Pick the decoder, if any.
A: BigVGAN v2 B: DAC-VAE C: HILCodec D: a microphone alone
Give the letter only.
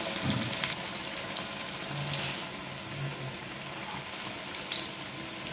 D